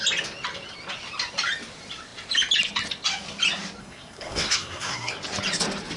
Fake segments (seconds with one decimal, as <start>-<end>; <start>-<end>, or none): 3.8-5.1